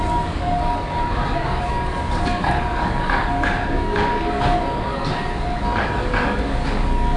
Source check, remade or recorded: remade